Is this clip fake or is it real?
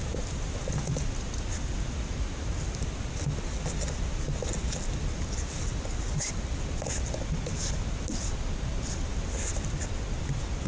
real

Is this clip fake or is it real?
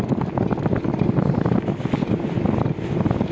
real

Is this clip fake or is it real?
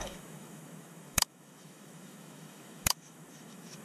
fake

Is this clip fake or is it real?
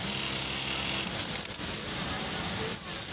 real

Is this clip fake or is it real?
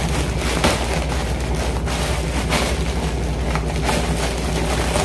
real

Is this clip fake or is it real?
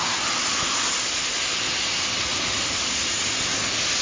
real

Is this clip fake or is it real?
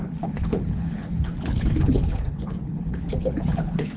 fake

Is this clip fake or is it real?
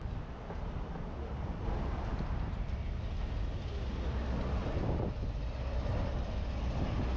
real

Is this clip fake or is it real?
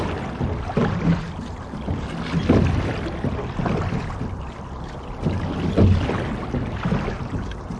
real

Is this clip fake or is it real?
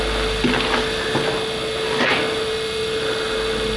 real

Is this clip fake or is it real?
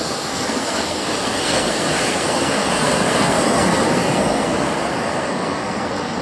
fake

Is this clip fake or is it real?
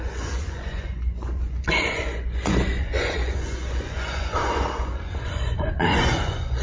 fake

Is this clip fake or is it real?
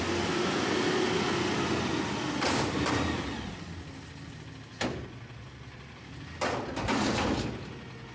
real